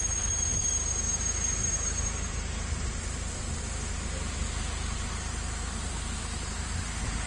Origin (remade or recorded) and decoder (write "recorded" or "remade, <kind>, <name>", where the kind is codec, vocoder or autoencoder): remade, vocoder, BigVGAN v2